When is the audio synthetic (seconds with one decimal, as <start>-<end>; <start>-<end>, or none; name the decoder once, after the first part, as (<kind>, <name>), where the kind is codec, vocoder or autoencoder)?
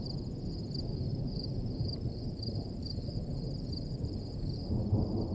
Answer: 1.1-4.3 (vocoder, BigVGAN v2)